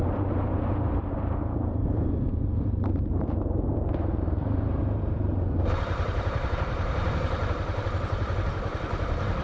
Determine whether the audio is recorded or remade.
remade